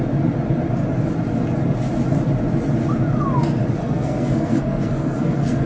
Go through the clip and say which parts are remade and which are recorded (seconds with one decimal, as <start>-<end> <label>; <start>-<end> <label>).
0.0-3.8 recorded; 3.8-5.7 remade